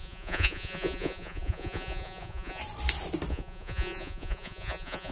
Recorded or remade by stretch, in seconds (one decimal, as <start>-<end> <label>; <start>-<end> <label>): 0.0-2.6 remade; 2.6-3.3 recorded; 3.3-5.1 remade

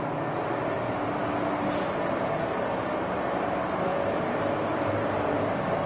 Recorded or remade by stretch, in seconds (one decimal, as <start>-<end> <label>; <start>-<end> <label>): 0.0-5.9 recorded

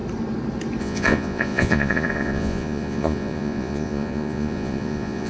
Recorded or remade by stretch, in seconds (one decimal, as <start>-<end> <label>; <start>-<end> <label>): 0.0-0.8 recorded; 0.8-5.3 remade

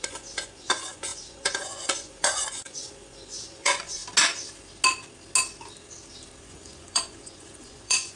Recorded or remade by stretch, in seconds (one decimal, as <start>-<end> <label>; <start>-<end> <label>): 0.0-4.0 remade; 4.0-6.4 recorded; 6.4-8.2 remade